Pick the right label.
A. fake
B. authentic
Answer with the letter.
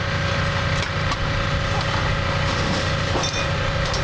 B